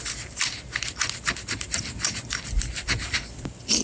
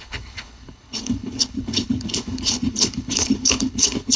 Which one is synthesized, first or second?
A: second